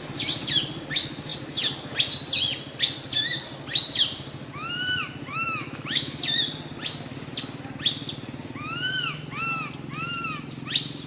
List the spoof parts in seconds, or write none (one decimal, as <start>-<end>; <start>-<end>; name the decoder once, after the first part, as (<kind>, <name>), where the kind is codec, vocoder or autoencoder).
5.3-6.2 (autoencoder, DAC-VAE)